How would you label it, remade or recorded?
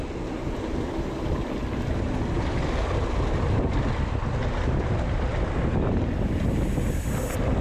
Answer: recorded